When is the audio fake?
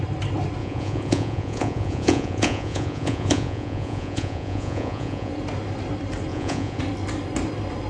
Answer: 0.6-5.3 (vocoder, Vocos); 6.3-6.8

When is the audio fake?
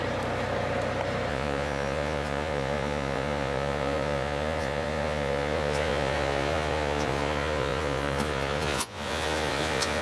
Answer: 1.3-10.0 (vocoder, Vocos)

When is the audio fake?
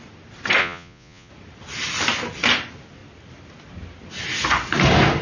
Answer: 0.6-1.3 (vocoder, Vocos)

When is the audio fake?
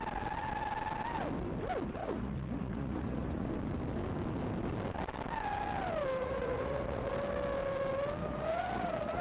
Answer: 2.0-3.5 (vocoder, Vocos); 6.2-7.1; 8.2-9.2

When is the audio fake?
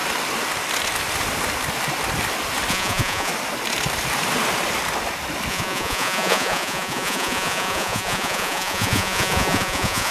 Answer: 2.7-3.3 (vocoder, Vocos); 5.5-10.1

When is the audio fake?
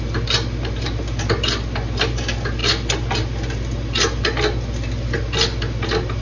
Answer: none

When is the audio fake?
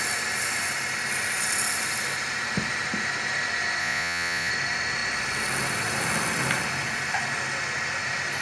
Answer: 3.8-4.5 (vocoder, Vocos)